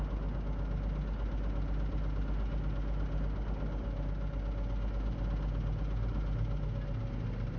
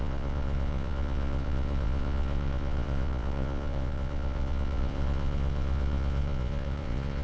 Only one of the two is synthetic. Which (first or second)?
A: second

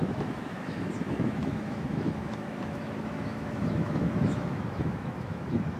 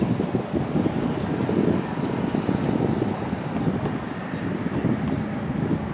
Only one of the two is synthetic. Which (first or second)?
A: first